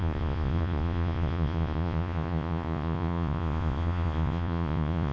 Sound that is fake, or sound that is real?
fake